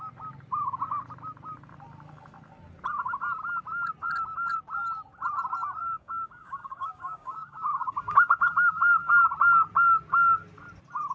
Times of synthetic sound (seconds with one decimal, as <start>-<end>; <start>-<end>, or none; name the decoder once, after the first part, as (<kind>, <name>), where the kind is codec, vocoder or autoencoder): 5.8-9.1 (codec, DAC)

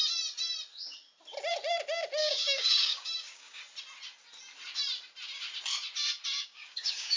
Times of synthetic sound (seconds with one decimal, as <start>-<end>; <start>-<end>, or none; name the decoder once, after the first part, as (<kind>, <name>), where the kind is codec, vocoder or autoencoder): 2.2-3.6 (codec, DAC); 6.4-7.2

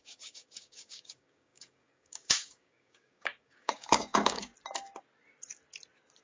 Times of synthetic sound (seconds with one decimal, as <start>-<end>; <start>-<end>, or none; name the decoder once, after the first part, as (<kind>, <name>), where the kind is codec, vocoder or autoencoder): 0.0-4.5 (codec, DAC)

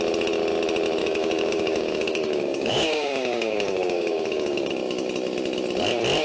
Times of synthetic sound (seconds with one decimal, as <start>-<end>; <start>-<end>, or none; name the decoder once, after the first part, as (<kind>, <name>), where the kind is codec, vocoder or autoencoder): 1.0-4.7 (codec, DAC)